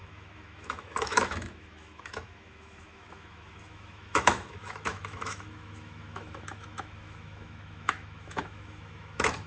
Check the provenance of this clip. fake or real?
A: fake